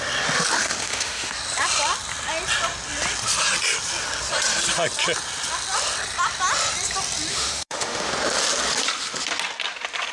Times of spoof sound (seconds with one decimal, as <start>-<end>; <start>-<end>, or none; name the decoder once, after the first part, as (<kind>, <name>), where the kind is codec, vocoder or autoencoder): 0.6-1.3 (autoencoder, DAC-VAE); 7.3-8.1